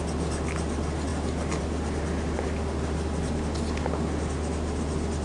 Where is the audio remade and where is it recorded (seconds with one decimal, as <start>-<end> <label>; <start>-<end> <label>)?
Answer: 0.0-5.2 recorded

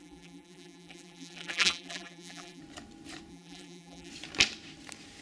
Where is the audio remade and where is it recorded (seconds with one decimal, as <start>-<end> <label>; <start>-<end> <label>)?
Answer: 0.0-2.6 remade; 2.6-3.3 recorded; 3.3-4.1 remade; 4.1-5.2 recorded

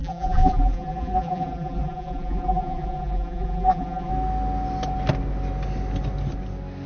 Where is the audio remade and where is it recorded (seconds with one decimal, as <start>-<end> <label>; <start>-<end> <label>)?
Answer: 0.0-4.1 remade; 4.1-6.9 recorded

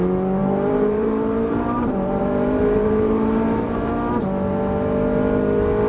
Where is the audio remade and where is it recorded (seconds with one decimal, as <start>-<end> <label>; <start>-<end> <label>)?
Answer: 0.0-0.4 recorded; 0.4-3.9 remade; 3.9-5.9 recorded

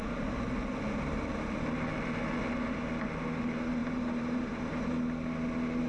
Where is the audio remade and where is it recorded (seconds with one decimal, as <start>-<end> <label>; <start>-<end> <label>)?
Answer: 0.0-3.8 recorded; 3.8-4.9 remade; 4.9-5.9 recorded

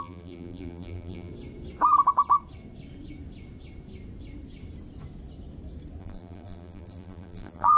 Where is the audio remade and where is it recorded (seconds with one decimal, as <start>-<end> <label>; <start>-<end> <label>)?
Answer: 0.0-1.3 remade; 1.3-6.0 recorded; 6.0-7.8 remade

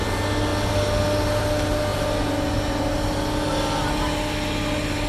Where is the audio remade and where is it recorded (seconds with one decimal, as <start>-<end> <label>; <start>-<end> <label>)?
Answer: 0.0-5.1 recorded

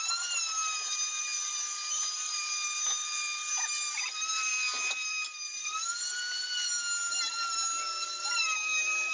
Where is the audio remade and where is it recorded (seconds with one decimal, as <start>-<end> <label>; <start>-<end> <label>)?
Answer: 0.0-9.1 remade